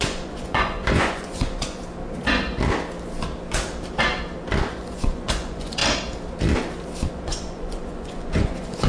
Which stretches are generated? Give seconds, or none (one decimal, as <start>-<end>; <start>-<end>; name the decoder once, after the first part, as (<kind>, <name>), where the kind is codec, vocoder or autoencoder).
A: 0.0-1.8 (vocoder, Vocos); 4.7-5.8; 7.1-8.9